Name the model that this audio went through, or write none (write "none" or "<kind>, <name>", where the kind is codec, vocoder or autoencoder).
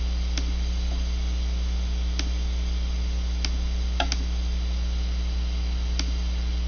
none